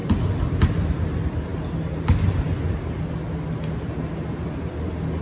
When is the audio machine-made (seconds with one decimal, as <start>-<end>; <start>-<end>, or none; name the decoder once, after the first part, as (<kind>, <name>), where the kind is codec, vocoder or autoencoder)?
none